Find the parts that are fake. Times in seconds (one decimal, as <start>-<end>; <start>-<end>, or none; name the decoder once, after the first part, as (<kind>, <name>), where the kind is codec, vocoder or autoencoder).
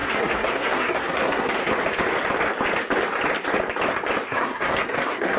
0.0-1.7 (codec, SNAC); 4.3-5.4